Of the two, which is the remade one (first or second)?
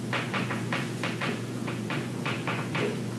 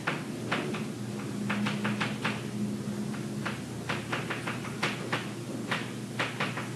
first